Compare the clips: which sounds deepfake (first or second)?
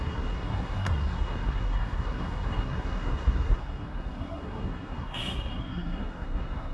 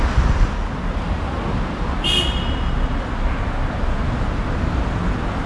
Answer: first